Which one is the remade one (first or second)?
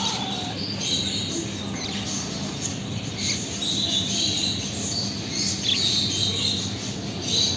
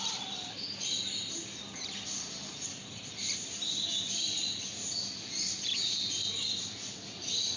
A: second